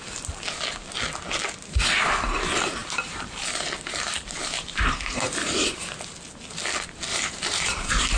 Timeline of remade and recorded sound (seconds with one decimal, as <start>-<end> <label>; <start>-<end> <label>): 0.0-2.8 recorded; 2.8-5.8 remade; 5.8-7.1 recorded; 7.1-8.2 remade